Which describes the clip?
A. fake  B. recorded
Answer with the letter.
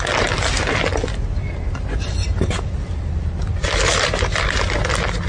B